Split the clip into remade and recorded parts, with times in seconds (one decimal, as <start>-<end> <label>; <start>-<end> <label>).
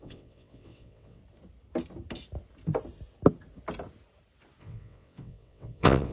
0.0-1.2 remade; 1.2-4.6 recorded; 4.6-6.1 remade